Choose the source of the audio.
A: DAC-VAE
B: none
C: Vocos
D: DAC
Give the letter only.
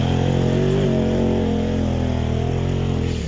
B